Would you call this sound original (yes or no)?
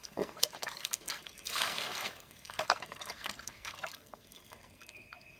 no